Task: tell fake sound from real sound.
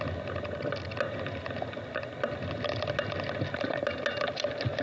real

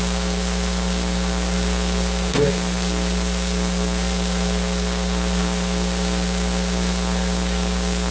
fake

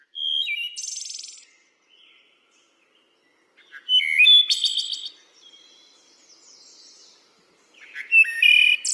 real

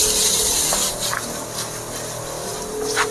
real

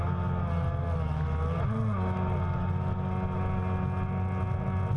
real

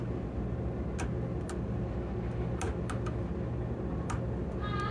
real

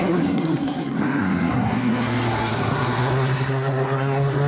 fake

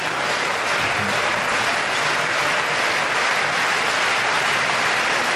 real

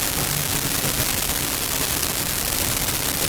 real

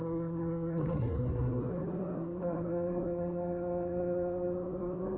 fake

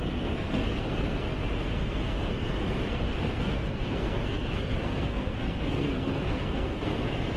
fake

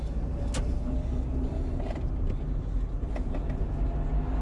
real